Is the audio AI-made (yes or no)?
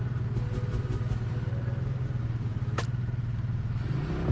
no